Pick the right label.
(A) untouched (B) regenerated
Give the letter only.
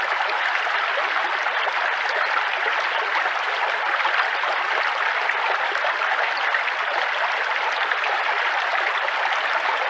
A